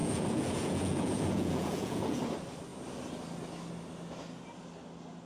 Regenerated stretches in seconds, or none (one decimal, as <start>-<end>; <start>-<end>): 0.0-2.2